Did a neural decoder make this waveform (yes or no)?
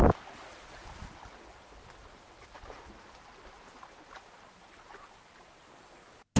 no